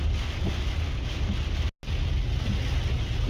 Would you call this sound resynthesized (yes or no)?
no